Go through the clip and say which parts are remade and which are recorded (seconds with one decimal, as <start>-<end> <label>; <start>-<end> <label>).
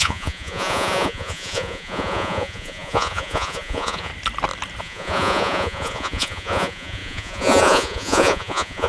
0.0-4.1 remade; 4.1-4.8 recorded; 4.8-8.9 remade